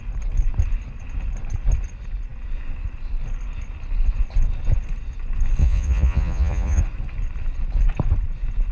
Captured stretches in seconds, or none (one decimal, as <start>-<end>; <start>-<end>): 0.0-5.6; 6.8-8.7